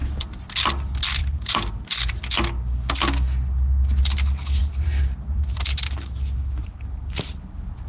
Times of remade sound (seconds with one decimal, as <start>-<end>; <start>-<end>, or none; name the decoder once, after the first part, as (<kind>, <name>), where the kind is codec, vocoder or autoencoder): 1.2-2.2 (vocoder, BigVGAN v2); 4.6-6.7